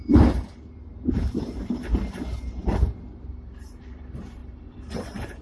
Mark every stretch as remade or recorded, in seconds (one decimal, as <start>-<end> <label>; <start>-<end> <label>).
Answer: 0.0-0.9 recorded; 0.9-2.6 remade; 2.6-3.8 recorded; 3.8-5.4 remade